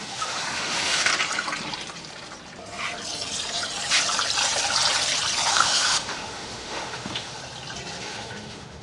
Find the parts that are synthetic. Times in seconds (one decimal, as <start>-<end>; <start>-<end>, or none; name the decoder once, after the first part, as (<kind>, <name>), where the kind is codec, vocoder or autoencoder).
0.0-1.1 (autoencoder, DAC-VAE); 5.5-7.4; 8.0-8.8